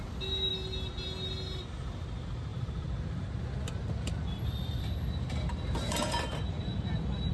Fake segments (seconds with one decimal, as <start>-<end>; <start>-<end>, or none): none